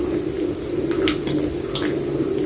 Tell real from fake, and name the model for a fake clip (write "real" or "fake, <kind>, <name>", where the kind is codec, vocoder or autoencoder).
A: real